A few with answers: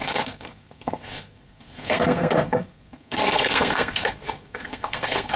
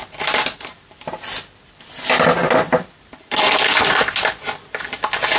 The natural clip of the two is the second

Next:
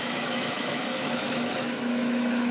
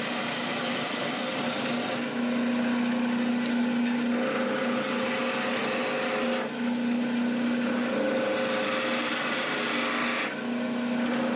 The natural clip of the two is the second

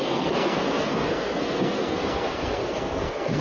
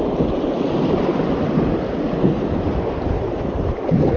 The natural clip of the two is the second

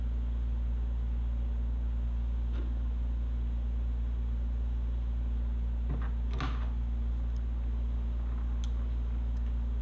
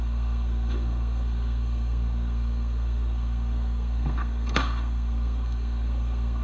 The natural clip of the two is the first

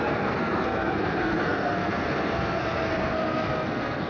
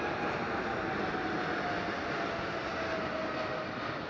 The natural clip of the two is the second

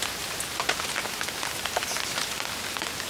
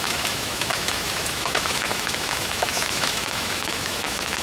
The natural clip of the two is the first